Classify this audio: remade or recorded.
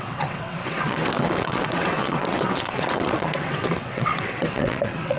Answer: remade